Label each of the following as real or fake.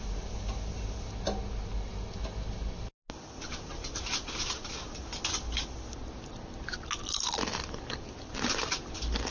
real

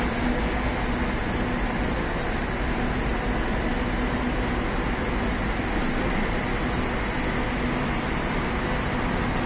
real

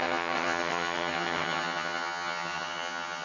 fake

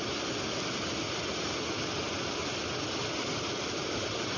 real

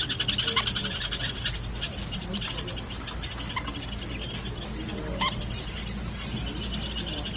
real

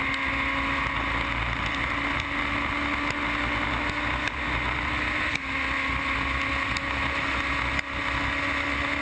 real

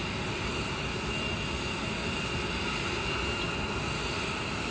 real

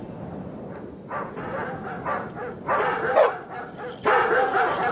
real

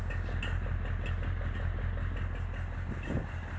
real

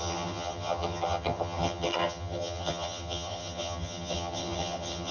fake